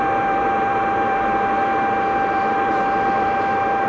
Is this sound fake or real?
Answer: fake